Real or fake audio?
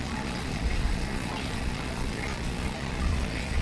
fake